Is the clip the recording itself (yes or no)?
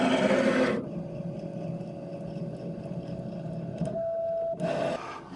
yes